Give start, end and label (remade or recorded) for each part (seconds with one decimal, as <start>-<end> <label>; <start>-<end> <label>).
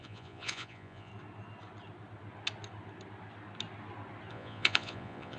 0.0-1.1 remade; 1.1-4.3 recorded; 4.3-5.4 remade